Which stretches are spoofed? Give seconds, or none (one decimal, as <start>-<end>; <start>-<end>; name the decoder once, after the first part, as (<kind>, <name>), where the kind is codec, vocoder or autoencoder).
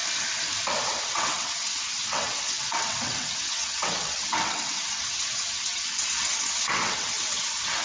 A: 1.0-7.8 (vocoder, WaveNeXt)